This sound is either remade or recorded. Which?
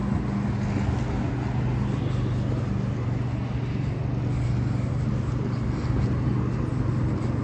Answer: recorded